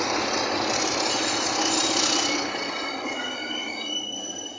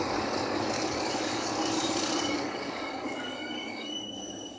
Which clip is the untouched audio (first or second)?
first